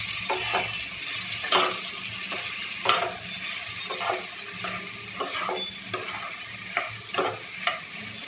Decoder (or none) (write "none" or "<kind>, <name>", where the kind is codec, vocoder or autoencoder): none